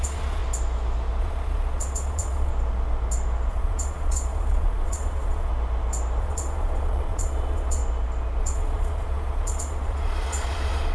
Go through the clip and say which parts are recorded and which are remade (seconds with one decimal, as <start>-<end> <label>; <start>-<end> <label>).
0.0-0.4 remade; 0.4-1.2 recorded; 1.2-2.5 remade; 2.5-3.5 recorded; 3.5-5.5 remade; 5.5-6.2 recorded; 6.2-7.8 remade; 7.8-8.4 recorded; 8.4-10.9 remade